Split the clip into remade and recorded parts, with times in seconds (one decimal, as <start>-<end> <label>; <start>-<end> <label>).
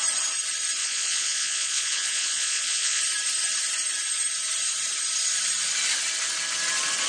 0.0-0.8 recorded; 0.8-3.0 remade; 3.0-7.1 recorded